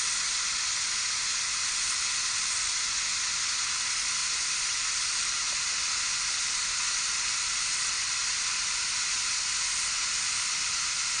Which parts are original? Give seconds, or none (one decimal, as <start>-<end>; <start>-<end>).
0.0-11.2